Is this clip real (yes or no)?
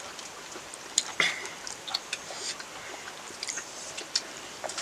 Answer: yes